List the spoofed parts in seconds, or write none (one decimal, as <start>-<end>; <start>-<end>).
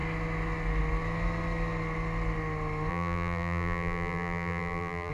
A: 2.9-5.1